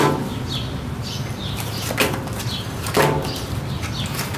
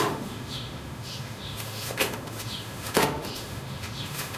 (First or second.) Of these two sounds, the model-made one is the second